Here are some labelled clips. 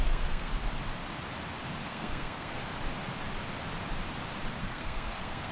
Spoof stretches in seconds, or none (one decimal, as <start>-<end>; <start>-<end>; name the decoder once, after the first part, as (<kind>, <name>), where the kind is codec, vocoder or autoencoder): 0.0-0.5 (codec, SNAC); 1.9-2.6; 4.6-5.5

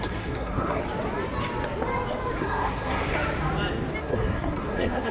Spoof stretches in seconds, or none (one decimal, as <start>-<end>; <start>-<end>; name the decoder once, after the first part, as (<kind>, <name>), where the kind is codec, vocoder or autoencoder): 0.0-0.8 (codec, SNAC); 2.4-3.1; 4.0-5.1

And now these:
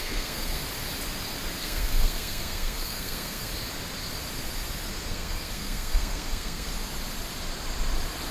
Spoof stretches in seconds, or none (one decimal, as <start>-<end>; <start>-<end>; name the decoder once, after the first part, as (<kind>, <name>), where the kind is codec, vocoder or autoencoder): 0.0-0.6 (codec, SNAC); 1.6-3.5; 5.1-6.7

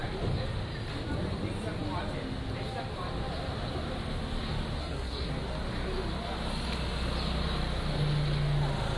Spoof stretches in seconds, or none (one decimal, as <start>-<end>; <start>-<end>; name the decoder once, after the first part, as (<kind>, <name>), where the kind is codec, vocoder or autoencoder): 4.8-5.3 (codec, SNAC)

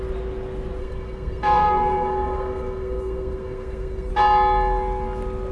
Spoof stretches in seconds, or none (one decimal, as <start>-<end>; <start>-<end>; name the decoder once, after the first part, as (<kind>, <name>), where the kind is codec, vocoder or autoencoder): 0.8-4.1 (codec, SNAC)

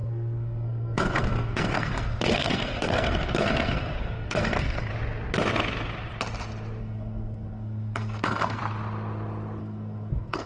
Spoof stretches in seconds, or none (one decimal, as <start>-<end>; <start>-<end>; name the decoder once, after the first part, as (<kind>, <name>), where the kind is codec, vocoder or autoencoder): 0.0-4.9 (codec, SNAC); 6.8-8.6; 9.6-10.5

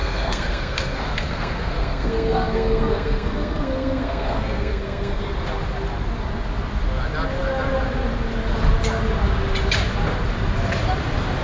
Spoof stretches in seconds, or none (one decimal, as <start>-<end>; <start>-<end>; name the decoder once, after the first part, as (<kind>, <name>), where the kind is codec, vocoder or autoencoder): 0.0-5.2 (codec, SNAC)